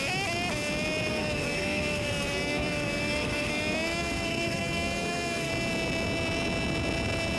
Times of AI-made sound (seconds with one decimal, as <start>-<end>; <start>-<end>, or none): 1.1-5.5